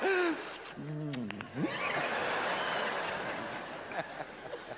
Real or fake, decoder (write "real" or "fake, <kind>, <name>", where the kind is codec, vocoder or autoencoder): real